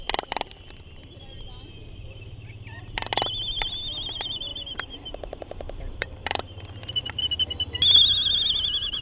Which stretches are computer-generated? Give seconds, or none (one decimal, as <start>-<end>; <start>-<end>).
1.8-2.8; 4.5-7.2